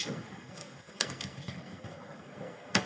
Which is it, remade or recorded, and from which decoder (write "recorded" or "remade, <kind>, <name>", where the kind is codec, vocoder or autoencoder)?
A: remade, codec, SNAC